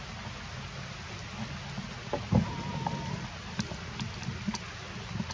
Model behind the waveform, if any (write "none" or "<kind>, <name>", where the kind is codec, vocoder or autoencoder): none